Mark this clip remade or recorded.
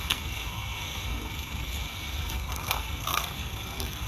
remade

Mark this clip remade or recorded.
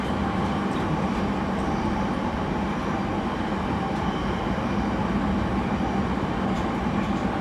recorded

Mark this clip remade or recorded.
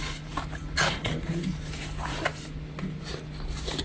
recorded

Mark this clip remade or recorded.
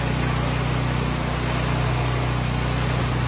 recorded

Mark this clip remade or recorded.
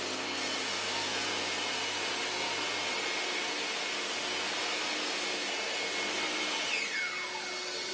recorded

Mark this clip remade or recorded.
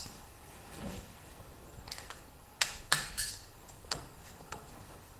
remade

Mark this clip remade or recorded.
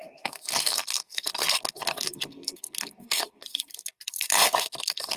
remade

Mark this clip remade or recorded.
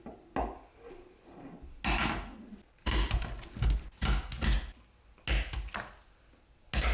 recorded